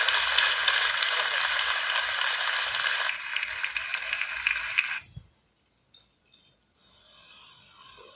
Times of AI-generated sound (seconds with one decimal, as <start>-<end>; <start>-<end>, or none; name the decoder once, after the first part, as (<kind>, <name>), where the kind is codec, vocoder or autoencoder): none